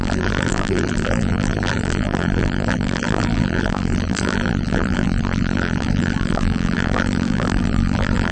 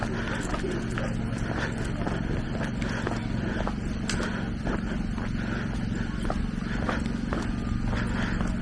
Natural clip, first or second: second